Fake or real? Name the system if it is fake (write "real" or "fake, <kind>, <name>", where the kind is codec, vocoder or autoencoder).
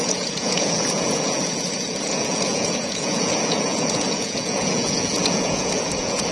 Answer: fake, vocoder, Vocos